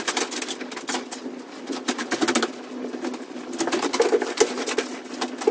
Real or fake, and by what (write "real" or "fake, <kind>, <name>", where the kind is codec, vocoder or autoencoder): real